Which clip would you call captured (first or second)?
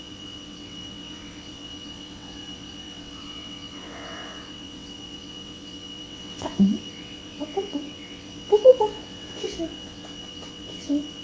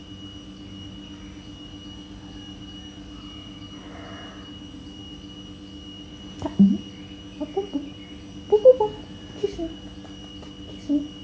second